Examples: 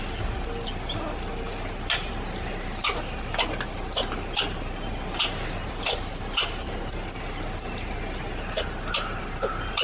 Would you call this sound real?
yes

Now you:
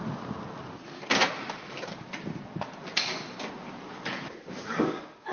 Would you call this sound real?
yes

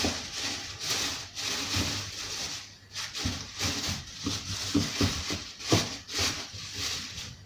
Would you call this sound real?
no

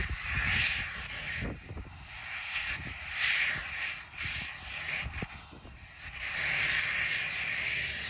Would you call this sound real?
yes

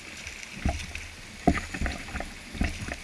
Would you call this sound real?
yes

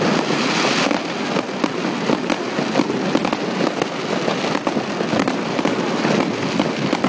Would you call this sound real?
yes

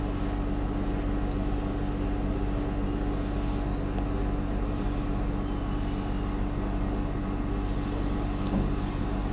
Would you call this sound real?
yes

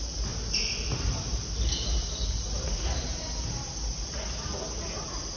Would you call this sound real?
yes